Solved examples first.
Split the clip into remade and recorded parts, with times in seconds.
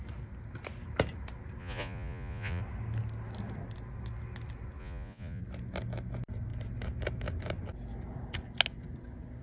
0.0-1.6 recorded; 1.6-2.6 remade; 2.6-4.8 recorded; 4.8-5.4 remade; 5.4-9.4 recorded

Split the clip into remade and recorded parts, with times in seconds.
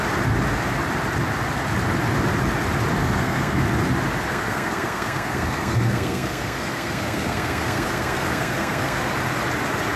0.0-3.0 recorded; 3.0-3.6 remade; 3.6-4.3 recorded; 4.3-9.1 remade; 9.1-10.0 recorded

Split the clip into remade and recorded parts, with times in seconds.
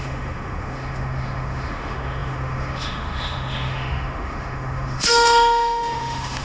0.0-6.4 remade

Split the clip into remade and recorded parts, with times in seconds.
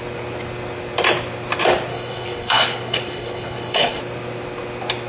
0.0-1.9 recorded; 1.9-4.0 remade; 4.0-5.1 recorded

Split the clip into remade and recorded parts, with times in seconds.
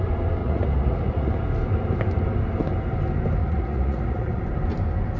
0.0-0.4 recorded; 0.4-1.3 remade; 1.3-3.4 recorded; 3.4-4.4 remade; 4.4-5.2 recorded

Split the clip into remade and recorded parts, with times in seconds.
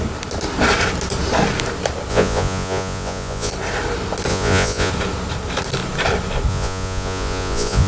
0.0-2.1 recorded; 2.1-3.5 remade; 3.5-4.3 recorded; 4.3-4.9 remade; 4.9-6.5 recorded; 6.5-7.9 remade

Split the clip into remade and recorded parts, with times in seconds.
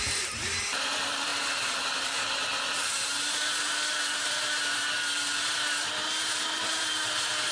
0.0-7.5 remade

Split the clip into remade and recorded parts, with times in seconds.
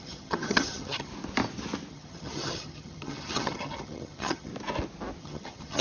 0.0-1.1 remade; 1.1-1.9 recorded; 1.9-4.5 remade; 4.5-5.2 recorded; 5.2-5.8 remade